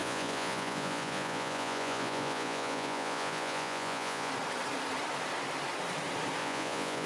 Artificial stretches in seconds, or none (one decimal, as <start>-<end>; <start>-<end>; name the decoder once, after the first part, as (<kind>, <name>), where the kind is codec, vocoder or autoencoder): 0.0-4.3 (vocoder, Vocos); 6.4-7.1